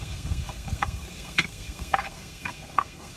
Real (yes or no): no